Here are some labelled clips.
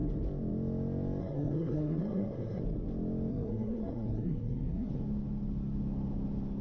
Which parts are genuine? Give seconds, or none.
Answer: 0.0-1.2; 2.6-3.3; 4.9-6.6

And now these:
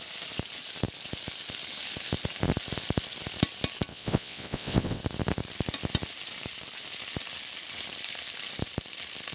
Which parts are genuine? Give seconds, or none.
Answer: 0.0-3.9; 5.0-9.3

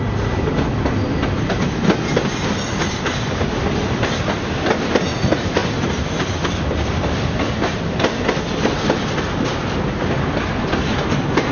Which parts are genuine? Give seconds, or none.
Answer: 0.0-11.5

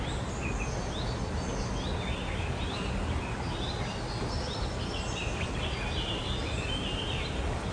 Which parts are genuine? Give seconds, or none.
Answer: 0.0-7.7

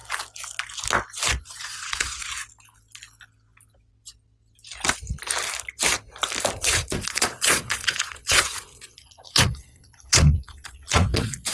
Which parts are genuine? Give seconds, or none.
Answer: 0.0-1.4; 2.2-6.8

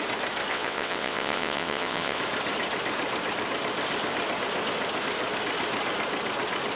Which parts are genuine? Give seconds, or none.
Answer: 0.0-0.5; 2.2-6.8

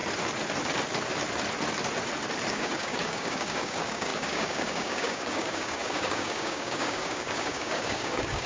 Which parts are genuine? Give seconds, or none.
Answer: 0.0-2.5

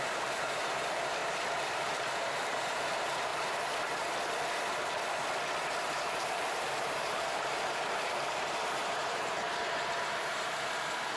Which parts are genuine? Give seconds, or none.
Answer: 1.2-1.7; 3.3-5.9